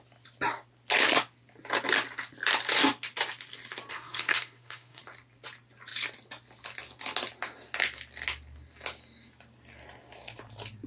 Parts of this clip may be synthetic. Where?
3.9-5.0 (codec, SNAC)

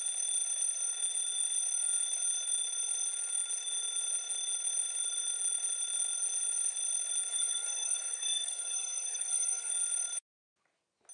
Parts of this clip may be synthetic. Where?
7.3-9.7 (codec, SNAC)

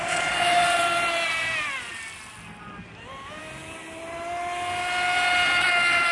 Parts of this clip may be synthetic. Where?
none